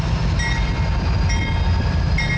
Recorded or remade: recorded